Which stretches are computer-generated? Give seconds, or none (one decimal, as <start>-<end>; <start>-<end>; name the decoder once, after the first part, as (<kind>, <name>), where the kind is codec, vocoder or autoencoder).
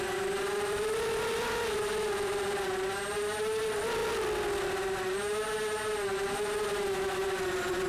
none